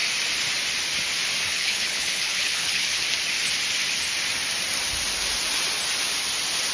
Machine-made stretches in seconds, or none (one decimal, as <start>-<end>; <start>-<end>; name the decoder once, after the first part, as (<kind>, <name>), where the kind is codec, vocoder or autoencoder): 1.5-3.0 (codec, HILCodec)